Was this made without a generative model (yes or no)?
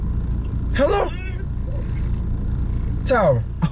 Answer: yes